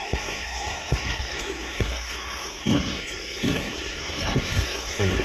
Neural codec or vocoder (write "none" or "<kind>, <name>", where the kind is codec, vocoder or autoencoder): codec, SNAC